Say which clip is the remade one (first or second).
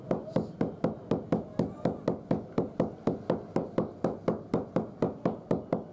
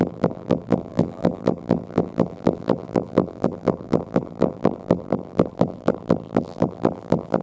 second